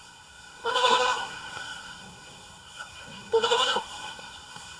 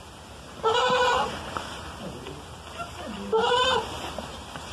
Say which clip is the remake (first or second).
first